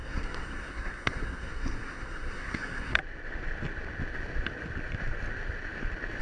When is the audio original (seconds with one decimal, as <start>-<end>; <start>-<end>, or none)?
3.0-6.2